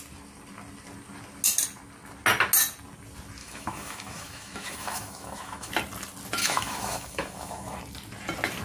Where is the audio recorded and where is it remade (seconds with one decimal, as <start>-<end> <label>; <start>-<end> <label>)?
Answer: 0.0-3.4 recorded; 3.4-5.7 remade; 5.7-6.4 recorded; 6.4-7.8 remade; 7.8-8.6 recorded